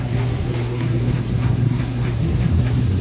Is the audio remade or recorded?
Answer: remade